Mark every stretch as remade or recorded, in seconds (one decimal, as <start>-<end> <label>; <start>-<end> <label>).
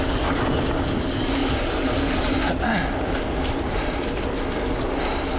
0.0-5.4 recorded